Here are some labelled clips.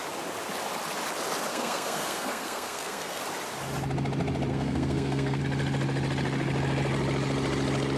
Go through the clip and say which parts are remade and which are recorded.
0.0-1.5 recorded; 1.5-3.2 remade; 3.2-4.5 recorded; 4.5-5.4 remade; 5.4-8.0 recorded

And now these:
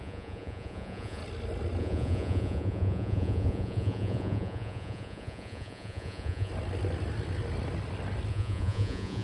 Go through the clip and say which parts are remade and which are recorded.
0.0-1.2 remade; 1.2-1.8 recorded; 1.8-6.5 remade; 6.5-8.3 recorded; 8.3-9.2 remade

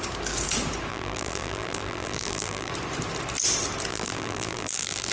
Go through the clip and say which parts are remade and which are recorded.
0.0-0.9 recorded; 0.9-2.7 remade; 2.7-3.9 recorded; 3.9-5.1 remade

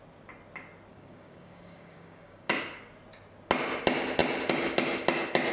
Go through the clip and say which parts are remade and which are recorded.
0.0-0.9 recorded; 0.9-2.5 remade; 2.5-5.5 recorded

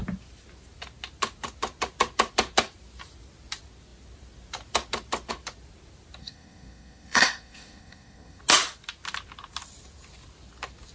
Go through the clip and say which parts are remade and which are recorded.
0.0-6.2 recorded; 6.2-8.4 remade; 8.4-10.9 recorded

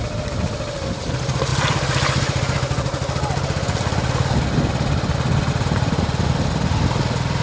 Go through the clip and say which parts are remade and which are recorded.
0.0-7.4 recorded

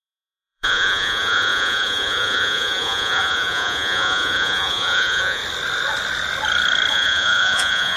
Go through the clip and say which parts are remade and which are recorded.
0.0-5.4 remade; 5.4-6.9 recorded; 6.9-8.0 remade